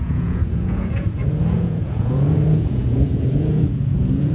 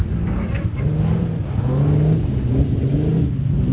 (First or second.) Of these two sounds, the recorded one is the second